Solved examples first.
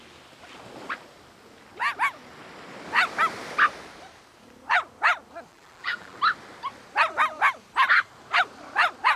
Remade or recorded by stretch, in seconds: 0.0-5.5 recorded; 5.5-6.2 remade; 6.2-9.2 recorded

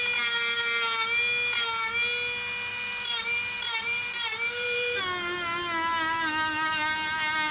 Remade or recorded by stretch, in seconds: 0.0-2.7 recorded; 2.7-5.0 remade; 5.0-7.5 recorded

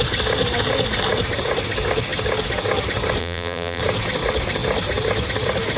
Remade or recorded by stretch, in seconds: 0.0-3.2 recorded; 3.2-3.8 remade; 3.8-5.8 recorded